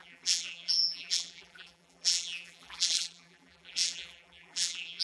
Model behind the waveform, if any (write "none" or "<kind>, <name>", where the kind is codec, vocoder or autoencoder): vocoder, BigVGAN v2